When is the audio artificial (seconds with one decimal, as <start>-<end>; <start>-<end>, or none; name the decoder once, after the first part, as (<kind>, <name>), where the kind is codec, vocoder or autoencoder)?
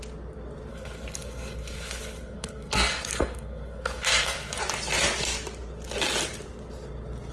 0.7-4.6 (codec, SNAC)